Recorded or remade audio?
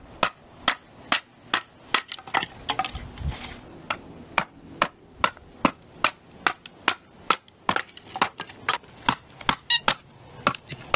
recorded